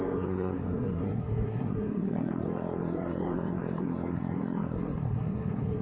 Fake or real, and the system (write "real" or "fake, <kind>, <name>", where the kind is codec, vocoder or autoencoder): fake, codec, SNAC